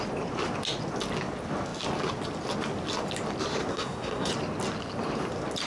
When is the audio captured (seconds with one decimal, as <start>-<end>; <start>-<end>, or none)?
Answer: 0.0-3.7; 4.3-5.7